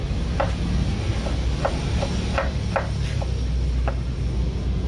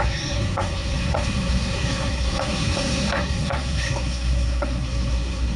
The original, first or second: first